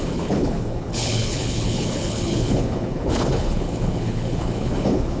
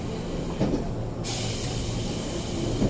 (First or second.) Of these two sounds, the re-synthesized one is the first